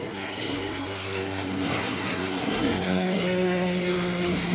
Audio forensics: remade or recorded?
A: remade